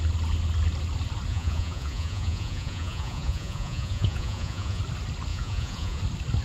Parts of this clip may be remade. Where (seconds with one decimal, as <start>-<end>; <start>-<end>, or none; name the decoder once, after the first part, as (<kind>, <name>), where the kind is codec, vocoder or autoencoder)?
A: 1.3-4.8 (vocoder, Vocos); 5.3-6.0

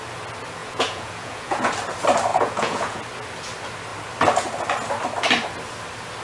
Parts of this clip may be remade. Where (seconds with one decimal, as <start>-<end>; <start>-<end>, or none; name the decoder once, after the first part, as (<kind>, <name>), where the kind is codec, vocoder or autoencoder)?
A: 0.6-1.7 (vocoder, Vocos); 2.3-3.0

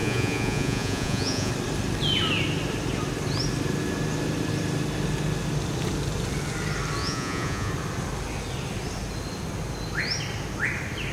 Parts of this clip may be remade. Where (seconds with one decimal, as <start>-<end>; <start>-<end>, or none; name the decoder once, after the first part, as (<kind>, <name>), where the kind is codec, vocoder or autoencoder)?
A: 0.0-1.5 (vocoder, Vocos); 7.0-7.7

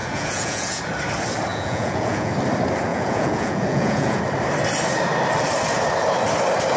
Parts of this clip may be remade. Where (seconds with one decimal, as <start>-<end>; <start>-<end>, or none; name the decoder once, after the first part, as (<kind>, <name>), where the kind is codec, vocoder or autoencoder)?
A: 0.0-0.8 (vocoder, Vocos); 1.5-2.3; 2.9-4.2

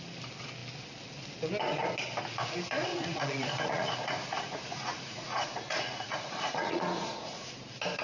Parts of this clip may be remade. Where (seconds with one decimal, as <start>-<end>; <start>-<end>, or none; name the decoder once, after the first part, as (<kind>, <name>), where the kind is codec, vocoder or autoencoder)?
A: 2.9-7.5 (vocoder, Vocos)

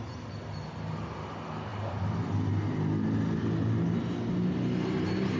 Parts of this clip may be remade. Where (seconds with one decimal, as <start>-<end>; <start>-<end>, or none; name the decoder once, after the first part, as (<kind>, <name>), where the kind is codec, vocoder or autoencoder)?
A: none